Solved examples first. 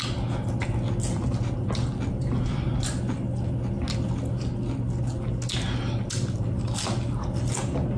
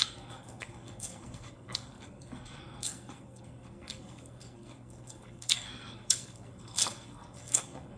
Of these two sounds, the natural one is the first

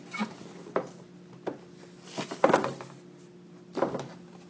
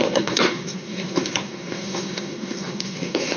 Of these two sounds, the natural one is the first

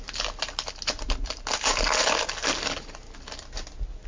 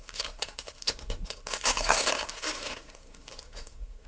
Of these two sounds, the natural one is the first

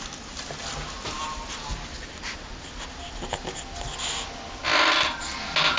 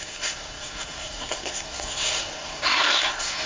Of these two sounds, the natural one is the first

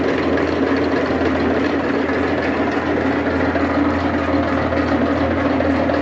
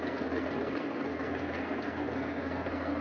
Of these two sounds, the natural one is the first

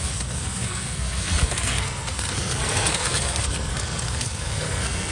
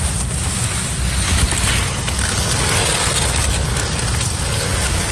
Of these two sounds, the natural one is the second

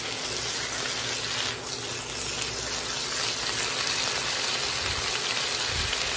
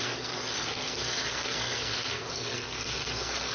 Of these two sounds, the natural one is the first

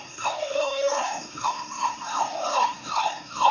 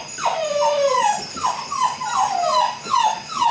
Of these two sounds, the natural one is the second